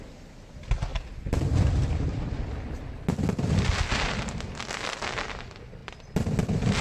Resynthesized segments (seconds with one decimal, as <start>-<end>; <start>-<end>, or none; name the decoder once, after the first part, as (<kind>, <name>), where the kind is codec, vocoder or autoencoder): none